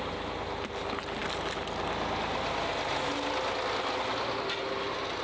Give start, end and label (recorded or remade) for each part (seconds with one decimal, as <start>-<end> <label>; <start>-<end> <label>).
0.0-5.2 recorded

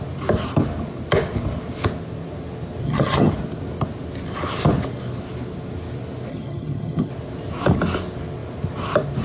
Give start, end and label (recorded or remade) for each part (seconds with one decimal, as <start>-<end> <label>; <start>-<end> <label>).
0.0-2.8 recorded; 2.8-3.3 remade; 3.3-6.3 recorded; 6.3-7.1 remade; 7.1-9.2 recorded

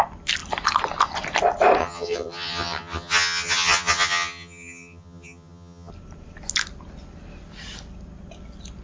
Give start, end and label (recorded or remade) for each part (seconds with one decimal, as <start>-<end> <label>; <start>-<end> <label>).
0.0-1.8 recorded; 1.8-5.9 remade; 5.9-8.8 recorded

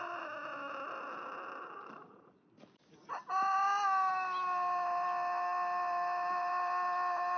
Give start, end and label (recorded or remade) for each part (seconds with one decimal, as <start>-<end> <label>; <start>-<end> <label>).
0.0-7.4 recorded